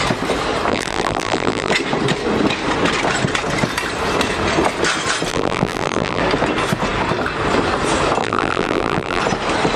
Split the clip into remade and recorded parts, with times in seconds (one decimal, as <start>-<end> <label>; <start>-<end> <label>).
0.0-0.7 recorded; 0.7-1.7 remade; 1.7-5.3 recorded; 5.3-6.2 remade; 6.2-8.2 recorded; 8.2-9.2 remade; 9.2-9.8 recorded